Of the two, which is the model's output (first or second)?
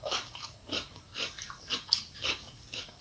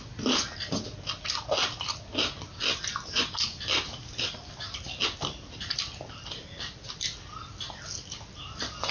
first